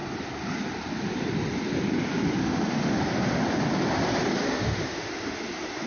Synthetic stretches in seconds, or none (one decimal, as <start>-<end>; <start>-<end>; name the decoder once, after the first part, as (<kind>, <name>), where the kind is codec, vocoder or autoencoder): 2.4-3.0 (autoencoder, DAC-VAE); 4.2-5.1